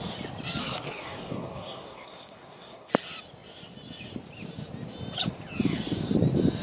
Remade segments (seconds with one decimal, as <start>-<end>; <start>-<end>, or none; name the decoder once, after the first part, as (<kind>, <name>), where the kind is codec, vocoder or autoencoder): 0.6-2.9 (codec, SNAC)